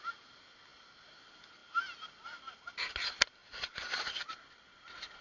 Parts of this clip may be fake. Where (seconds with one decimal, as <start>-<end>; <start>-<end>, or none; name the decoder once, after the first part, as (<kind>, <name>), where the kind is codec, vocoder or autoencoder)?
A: 0.7-1.2 (vocoder, BigVGAN v2); 3.4-4.3